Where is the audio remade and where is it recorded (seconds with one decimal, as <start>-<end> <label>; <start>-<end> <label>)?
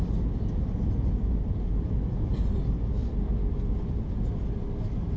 0.0-5.2 recorded